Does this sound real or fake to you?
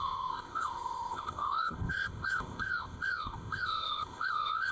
fake